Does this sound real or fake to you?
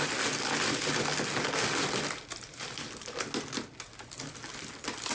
real